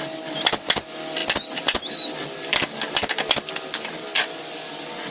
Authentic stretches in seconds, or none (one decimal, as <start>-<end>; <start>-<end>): 0.0-5.1